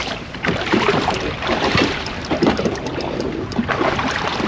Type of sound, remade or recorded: remade